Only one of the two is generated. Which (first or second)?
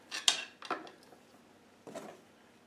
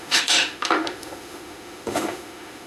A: second